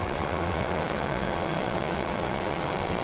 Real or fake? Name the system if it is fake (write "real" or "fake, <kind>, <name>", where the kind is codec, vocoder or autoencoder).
fake, vocoder, WaveNeXt